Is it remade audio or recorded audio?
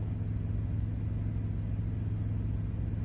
recorded